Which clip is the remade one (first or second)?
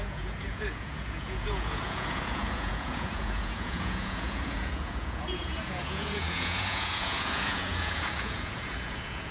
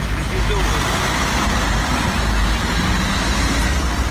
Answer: first